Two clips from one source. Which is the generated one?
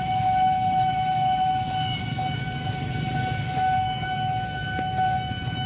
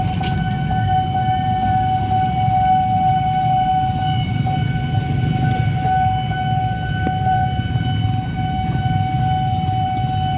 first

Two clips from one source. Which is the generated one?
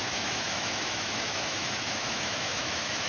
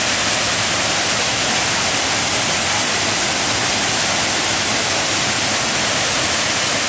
first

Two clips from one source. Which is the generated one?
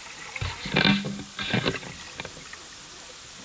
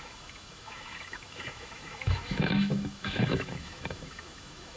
second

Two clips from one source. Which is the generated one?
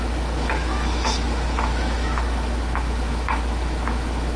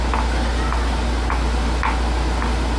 first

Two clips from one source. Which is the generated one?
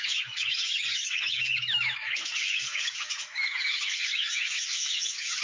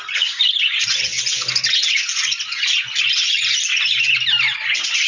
first